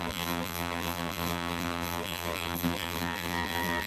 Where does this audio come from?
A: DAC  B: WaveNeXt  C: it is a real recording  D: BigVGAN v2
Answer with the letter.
D